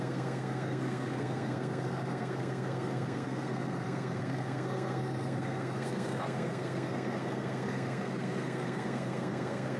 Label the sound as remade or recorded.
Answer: remade